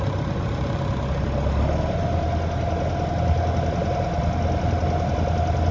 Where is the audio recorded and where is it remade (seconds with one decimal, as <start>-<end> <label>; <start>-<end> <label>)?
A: 0.0-5.7 recorded